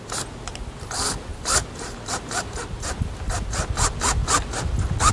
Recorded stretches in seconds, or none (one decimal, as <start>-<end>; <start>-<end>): 0.0-5.1